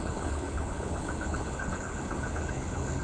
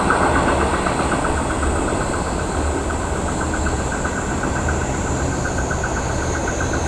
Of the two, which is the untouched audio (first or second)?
second